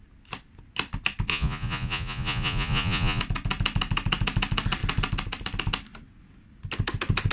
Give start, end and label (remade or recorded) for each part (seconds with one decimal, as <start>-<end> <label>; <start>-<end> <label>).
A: 0.0-1.3 recorded; 1.3-3.2 remade; 3.2-7.3 recorded